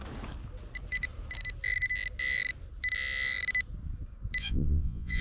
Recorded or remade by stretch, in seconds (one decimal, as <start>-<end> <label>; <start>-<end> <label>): 0.0-4.4 recorded; 4.4-5.2 remade